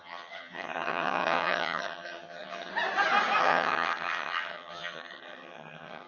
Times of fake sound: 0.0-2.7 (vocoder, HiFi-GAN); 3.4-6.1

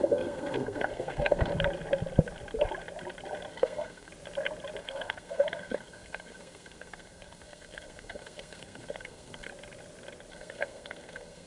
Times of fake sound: 0.0-1.5 (codec, SNAC); 3.5-4.1; 4.8-9.5; 10.3-11.5

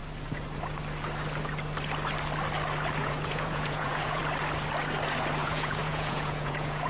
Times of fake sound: 3.0-4.2 (vocoder, Vocos); 5.4-6.9

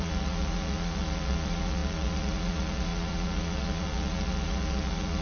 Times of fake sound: 0.0-5.2 (vocoder, Vocos)

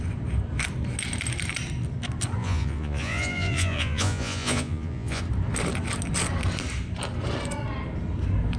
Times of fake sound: 2.4-5.2 (vocoder, Vocos)

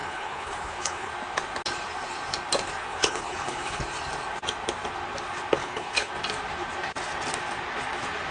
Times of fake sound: 0.0-1.1 (codec, HILCodec); 2.9-3.8; 5.6-6.1

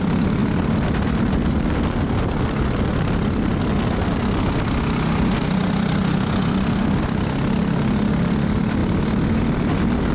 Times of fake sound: none

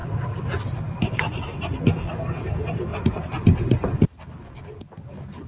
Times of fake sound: 0.8-1.5 (vocoder, BigVGAN v2); 2.1-2.9; 4.6-5.5